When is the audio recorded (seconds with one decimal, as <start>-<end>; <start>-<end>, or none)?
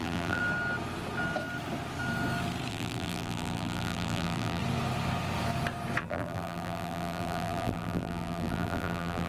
0.4-2.7; 4.6-6.0